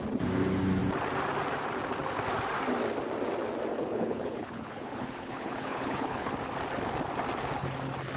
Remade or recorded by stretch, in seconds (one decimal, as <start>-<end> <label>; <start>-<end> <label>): 0.0-3.7 recorded; 3.7-6.3 remade; 6.3-8.2 recorded